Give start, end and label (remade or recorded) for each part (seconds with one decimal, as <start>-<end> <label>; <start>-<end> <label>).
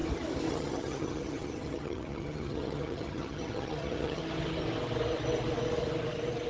0.0-0.5 recorded; 0.5-4.2 remade; 4.2-6.5 recorded